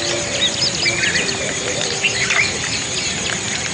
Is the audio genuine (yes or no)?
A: yes